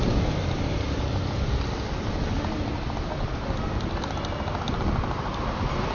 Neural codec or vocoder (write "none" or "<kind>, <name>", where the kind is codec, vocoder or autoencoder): none